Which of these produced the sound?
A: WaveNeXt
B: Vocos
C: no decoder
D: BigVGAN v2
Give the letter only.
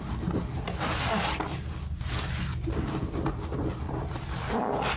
C